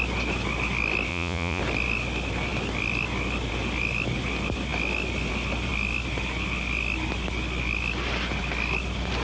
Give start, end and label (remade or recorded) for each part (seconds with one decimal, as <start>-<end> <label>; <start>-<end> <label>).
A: 0.0-1.1 recorded; 1.1-1.6 remade; 1.6-9.2 recorded